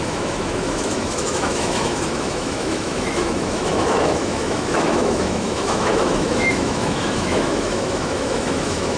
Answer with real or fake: fake